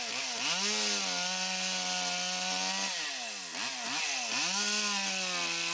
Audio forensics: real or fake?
real